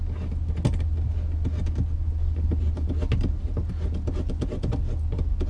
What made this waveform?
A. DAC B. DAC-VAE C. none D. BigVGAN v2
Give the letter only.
C